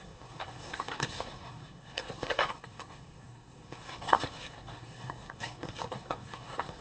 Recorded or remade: remade